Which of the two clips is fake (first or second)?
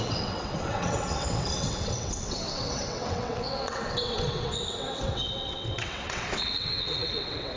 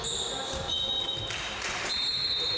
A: first